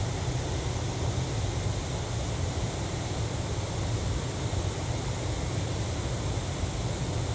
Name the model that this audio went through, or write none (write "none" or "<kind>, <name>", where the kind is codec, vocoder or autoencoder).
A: none